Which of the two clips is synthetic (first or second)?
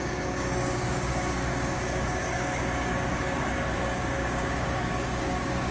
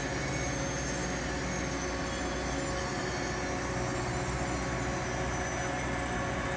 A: first